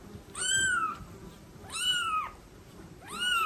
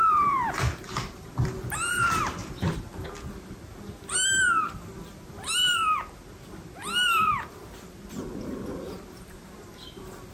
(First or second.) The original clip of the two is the second